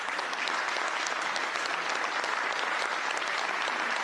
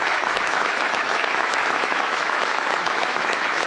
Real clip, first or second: first